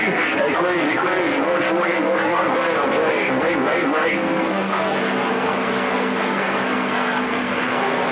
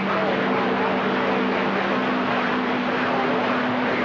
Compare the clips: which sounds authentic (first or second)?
second